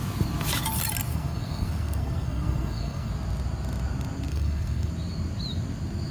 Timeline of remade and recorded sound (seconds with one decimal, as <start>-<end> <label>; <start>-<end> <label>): 0.0-1.1 recorded; 1.1-3.1 remade; 3.1-4.3 recorded; 4.3-4.9 remade; 4.9-6.1 recorded